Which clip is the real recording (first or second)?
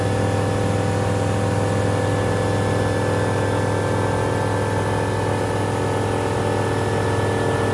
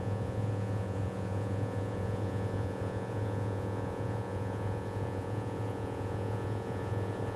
first